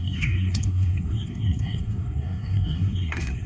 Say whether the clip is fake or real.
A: fake